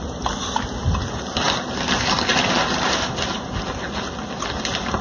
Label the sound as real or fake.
real